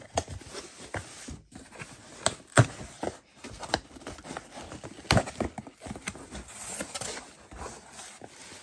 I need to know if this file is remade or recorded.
recorded